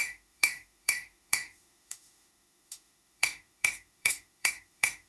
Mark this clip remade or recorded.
remade